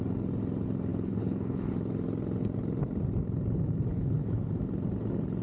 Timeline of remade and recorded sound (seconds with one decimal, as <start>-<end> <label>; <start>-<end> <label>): 0.0-0.9 recorded; 0.9-1.7 remade; 1.7-3.9 recorded; 3.9-4.5 remade; 4.5-5.4 recorded